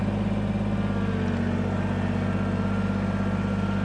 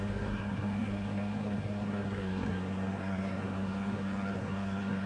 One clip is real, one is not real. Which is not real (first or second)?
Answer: second